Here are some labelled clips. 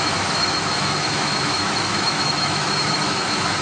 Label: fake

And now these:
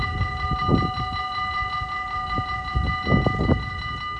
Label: real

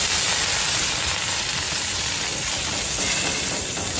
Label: real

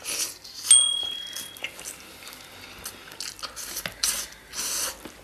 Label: real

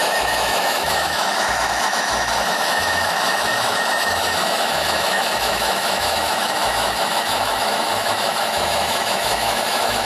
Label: fake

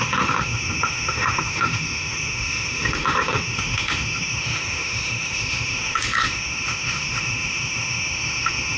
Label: fake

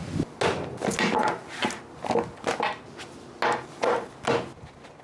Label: real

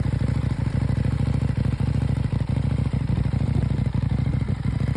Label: real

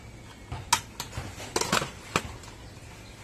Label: real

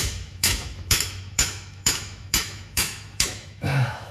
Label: fake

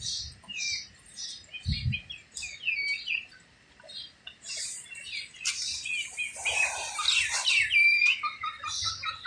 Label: real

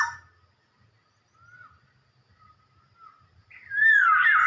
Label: real